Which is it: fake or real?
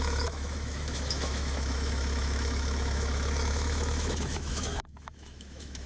fake